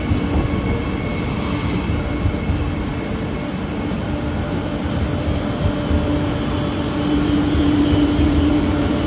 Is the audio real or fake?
real